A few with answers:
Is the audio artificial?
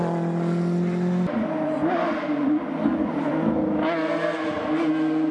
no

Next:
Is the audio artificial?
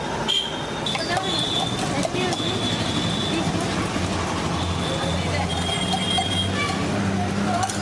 no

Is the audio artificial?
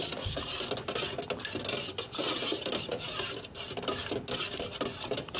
no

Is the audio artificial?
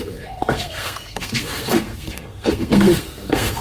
yes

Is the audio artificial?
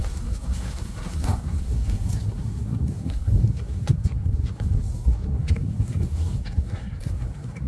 yes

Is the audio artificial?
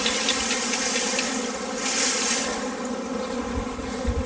no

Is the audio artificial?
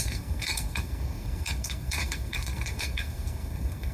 yes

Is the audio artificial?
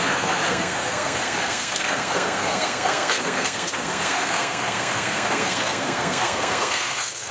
yes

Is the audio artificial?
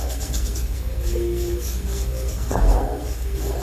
yes